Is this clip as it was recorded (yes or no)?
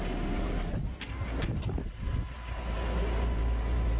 yes